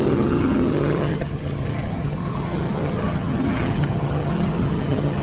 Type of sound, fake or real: fake